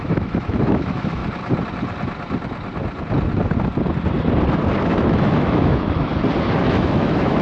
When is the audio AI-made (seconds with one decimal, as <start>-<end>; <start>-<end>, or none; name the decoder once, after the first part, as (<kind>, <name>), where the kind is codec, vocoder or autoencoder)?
0.0-1.2 (autoencoder, DAC-VAE); 4.9-6.1; 6.6-7.4